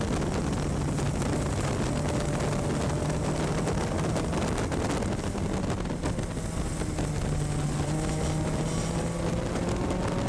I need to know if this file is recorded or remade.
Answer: recorded